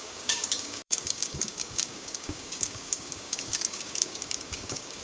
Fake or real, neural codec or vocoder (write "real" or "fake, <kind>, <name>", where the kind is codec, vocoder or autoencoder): fake, codec, DAC